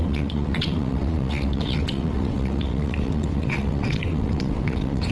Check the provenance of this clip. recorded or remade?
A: remade